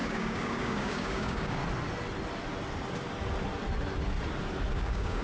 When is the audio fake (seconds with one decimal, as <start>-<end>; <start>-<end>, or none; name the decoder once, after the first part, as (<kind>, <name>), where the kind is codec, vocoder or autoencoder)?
0.0-1.6 (codec, DAC); 4.7-5.2